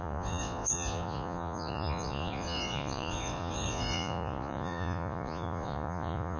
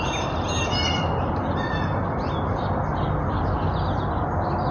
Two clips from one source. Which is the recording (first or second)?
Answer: second